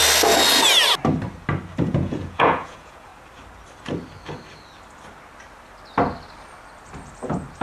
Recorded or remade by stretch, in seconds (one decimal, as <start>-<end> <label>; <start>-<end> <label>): 0.0-1.8 recorded; 1.8-3.1 remade; 3.1-7.6 recorded